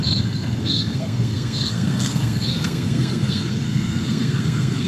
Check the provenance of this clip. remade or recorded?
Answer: remade